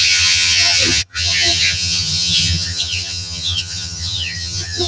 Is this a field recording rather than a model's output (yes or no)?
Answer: no